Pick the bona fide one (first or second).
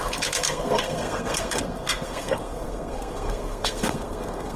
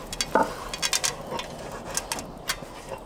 second